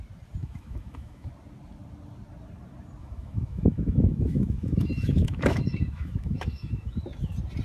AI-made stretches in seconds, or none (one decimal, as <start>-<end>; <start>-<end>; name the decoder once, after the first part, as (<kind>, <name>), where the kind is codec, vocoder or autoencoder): 0.4-1.3 (autoencoder, DAC-VAE); 3.0-7.0